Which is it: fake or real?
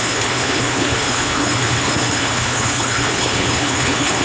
fake